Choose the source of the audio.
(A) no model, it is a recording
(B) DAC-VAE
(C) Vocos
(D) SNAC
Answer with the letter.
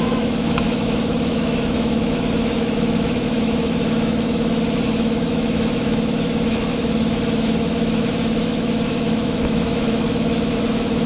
B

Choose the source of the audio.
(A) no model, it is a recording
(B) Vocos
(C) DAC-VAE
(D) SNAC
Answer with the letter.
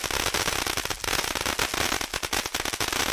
A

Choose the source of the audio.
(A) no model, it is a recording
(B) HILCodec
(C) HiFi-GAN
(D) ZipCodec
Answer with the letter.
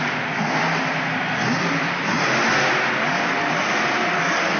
A